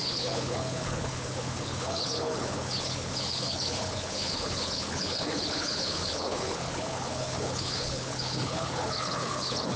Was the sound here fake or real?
fake